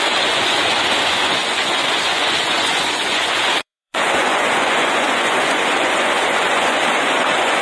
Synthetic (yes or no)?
yes